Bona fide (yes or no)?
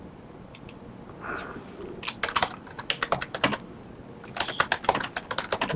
yes